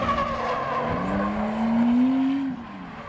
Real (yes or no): yes